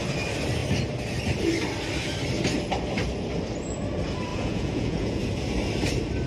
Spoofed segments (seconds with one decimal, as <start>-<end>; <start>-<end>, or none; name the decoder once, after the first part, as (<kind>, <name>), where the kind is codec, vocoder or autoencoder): 4.3-5.2 (vocoder, Vocos)